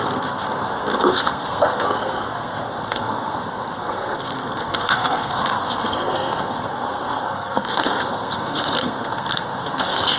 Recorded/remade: remade